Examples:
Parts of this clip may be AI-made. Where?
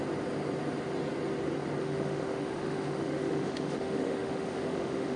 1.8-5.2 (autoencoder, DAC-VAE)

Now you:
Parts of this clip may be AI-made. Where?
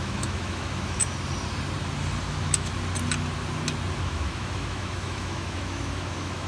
0.0-1.0 (autoencoder, DAC-VAE); 2.2-2.7; 4.0-6.5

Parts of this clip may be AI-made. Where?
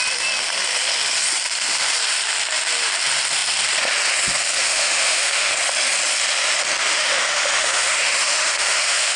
4.6-5.5 (autoencoder, DAC-VAE); 6.9-9.2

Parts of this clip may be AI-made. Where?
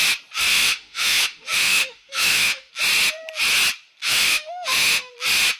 0.5-2.7 (autoencoder, DAC-VAE); 4.0-5.1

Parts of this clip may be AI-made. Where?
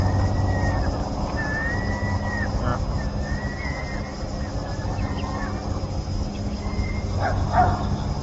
none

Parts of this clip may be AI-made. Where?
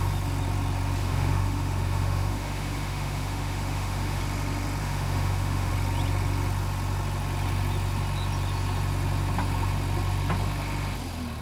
1.0-4.2 (autoencoder, DAC-VAE); 4.8-5.7